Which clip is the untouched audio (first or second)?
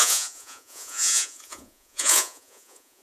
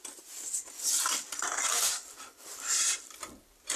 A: second